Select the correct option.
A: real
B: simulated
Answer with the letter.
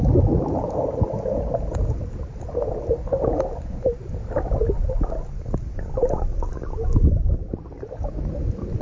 A